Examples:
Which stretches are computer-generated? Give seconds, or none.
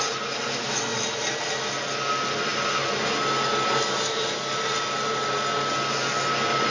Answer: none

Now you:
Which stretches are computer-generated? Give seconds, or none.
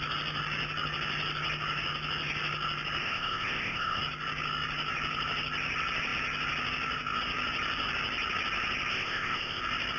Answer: 3.0-4.0 (codec, ZipCodec); 8.9-9.6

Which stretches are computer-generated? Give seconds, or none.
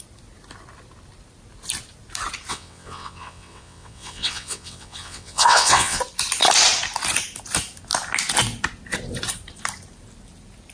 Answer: 2.5-6.0 (vocoder, WaveNeXt)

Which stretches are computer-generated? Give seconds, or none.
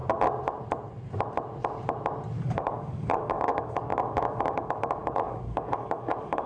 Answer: 2.4-6.5 (codec, DAC)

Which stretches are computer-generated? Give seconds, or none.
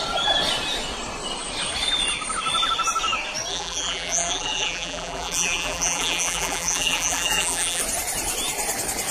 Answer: 3.5-7.8 (vocoder, BigVGAN v2)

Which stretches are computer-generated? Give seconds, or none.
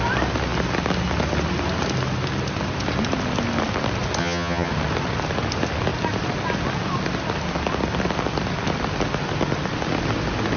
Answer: 4.2-4.7 (vocoder, HiFi-GAN)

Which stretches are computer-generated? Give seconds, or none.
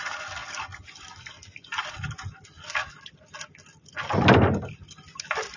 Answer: none